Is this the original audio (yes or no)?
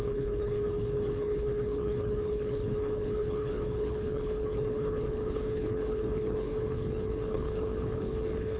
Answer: no